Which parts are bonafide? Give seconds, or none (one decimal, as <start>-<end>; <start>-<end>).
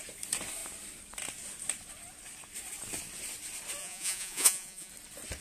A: 0.0-3.8; 4.9-5.4